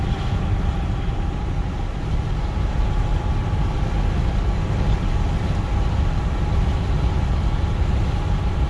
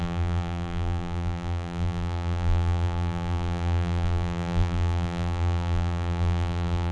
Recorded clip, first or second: first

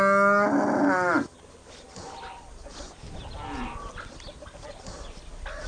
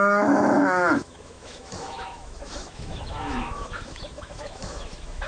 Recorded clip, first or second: first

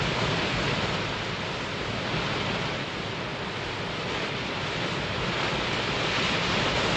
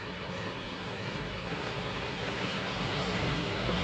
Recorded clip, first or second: first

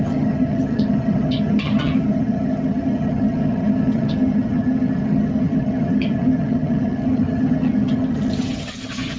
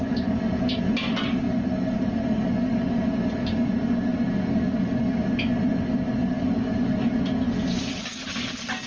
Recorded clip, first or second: second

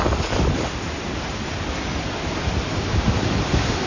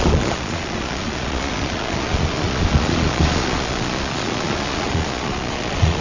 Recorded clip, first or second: first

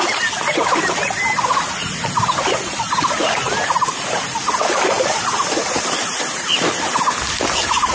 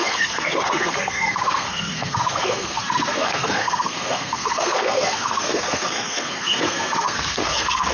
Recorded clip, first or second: first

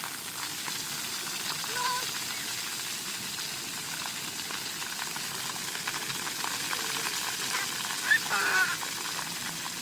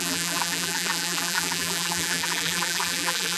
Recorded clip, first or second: first